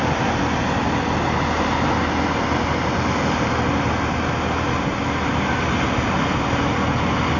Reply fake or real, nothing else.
real